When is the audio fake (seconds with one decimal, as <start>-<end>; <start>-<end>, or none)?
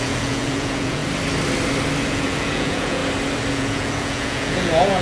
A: 0.0-1.0; 2.1-3.0; 3.5-5.0